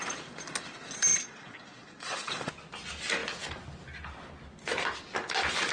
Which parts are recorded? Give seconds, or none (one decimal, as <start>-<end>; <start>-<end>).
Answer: 0.0-1.1; 2.5-5.7